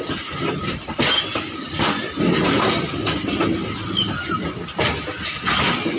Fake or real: real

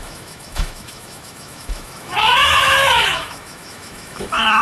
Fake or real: fake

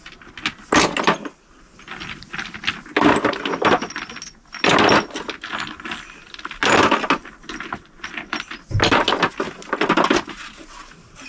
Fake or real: real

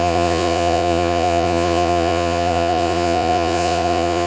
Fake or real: fake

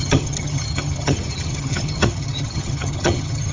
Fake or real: fake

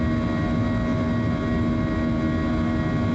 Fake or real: real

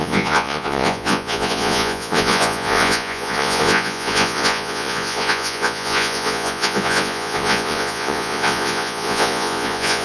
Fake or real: fake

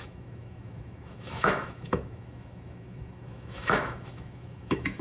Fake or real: fake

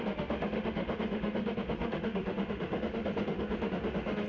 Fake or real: fake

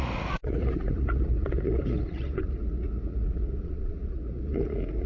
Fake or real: fake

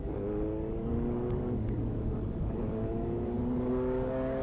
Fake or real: fake